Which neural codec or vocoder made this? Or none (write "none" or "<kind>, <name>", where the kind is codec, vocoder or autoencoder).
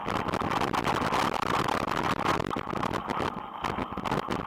none